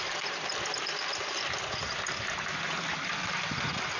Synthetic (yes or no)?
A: no